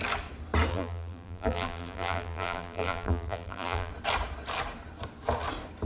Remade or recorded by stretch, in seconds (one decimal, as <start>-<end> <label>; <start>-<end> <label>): 0.0-0.7 recorded; 0.7-3.9 remade; 3.9-5.9 recorded